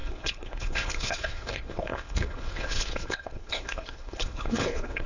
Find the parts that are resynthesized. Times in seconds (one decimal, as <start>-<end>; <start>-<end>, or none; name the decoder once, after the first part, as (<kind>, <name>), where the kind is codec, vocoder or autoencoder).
0.0-5.1 (codec, HILCodec)